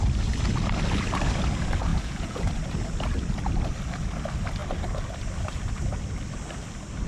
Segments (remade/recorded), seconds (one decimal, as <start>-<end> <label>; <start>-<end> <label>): 0.0-1.9 recorded; 1.9-2.5 remade; 2.5-7.1 recorded